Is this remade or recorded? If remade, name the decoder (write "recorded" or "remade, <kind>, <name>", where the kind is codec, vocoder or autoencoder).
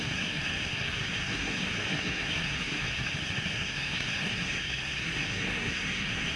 remade, codec, SNAC